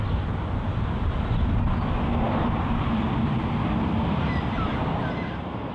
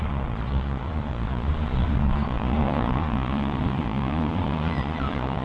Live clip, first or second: first